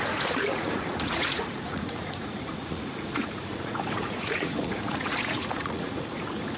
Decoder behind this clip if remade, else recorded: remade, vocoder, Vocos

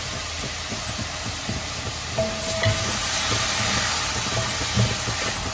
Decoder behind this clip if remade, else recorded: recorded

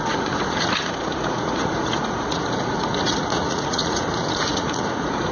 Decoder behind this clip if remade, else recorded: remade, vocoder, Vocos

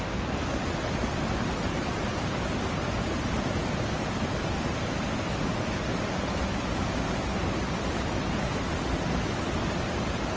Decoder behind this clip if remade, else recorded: recorded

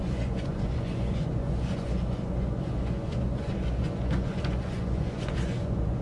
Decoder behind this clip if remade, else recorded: remade, vocoder, Vocos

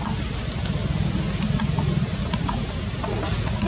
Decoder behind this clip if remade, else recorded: recorded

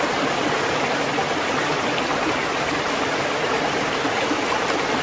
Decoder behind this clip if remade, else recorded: recorded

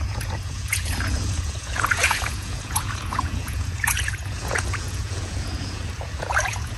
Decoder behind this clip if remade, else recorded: remade, vocoder, Vocos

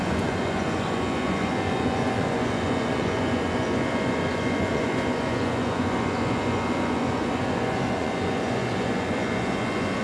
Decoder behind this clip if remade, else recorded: remade, vocoder, Vocos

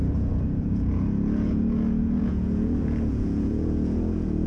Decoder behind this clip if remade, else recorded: remade, vocoder, Vocos